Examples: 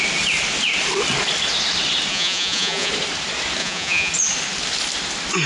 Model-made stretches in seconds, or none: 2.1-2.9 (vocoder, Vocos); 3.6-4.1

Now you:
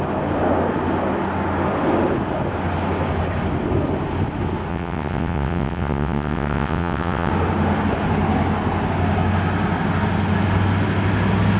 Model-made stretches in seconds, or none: 4.7-7.3 (vocoder, WaveNeXt)

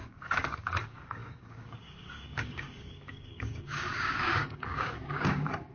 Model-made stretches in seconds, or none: 0.0-5.7 (codec, DAC)

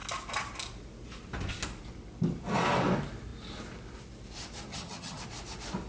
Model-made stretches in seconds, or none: 4.7-5.2 (vocoder, HiFi-GAN)

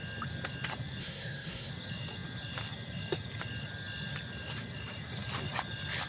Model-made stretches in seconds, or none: 1.0-1.7 (codec, SNAC)

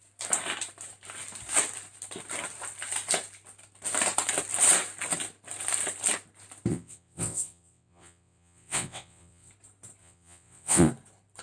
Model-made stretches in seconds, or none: 6.7-9.5 (vocoder, WaveNeXt); 10.0-10.9

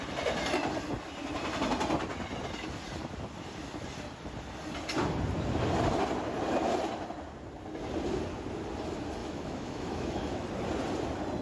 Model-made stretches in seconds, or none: 9.2-10.5 (autoencoder, DAC-VAE)